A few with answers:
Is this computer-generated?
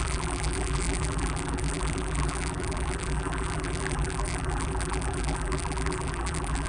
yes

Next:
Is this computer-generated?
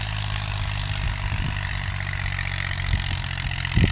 no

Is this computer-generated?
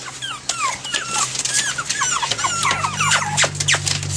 no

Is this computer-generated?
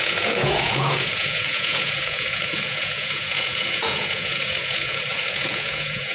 yes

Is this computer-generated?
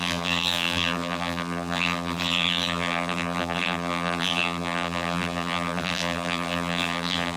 yes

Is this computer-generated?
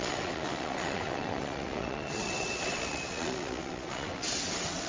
yes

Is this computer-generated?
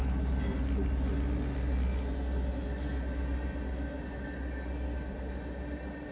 no